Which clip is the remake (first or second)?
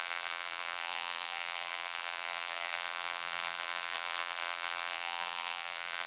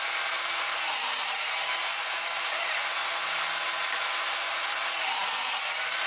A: first